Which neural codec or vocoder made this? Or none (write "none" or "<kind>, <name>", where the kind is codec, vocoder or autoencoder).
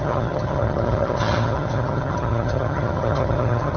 vocoder, HiFi-GAN